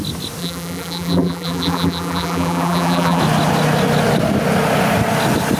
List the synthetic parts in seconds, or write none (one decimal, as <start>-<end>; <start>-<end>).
0.4-3.2